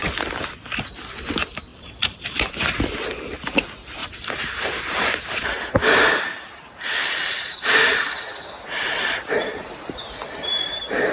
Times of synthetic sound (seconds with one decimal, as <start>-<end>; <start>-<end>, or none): 1.7-2.5; 4.0-8.2